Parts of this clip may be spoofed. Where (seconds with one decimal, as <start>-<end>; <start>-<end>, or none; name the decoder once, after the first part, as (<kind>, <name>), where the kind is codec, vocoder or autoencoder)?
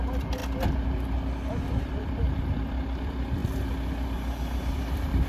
0.0-0.4 (vocoder, BigVGAN v2); 1.8-3.4; 4.7-5.3